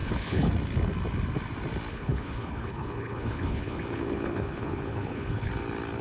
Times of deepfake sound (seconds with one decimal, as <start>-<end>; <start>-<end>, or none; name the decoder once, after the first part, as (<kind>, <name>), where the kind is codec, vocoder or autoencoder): 0.0-0.5 (codec, HILCodec); 1.9-5.5